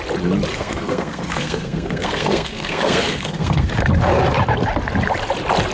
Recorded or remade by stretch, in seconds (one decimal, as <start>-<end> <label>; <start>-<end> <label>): 0.0-0.5 recorded; 0.5-3.7 remade; 3.7-5.7 recorded